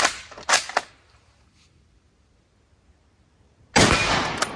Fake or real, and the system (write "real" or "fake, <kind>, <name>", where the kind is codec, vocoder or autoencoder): real